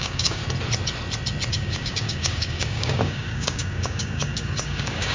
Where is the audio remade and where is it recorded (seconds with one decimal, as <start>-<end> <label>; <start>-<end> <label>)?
0.0-0.4 remade; 0.4-1.5 recorded; 1.5-5.1 remade